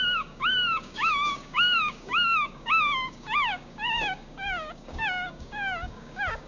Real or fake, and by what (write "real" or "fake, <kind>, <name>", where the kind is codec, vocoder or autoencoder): fake, codec, DAC